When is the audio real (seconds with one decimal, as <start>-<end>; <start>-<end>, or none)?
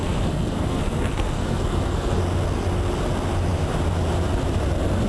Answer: 2.2-5.1